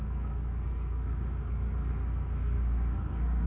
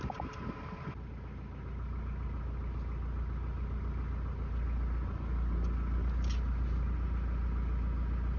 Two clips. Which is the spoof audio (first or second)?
first